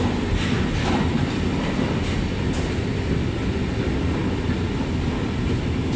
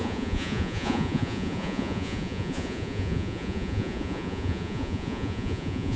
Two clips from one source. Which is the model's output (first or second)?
second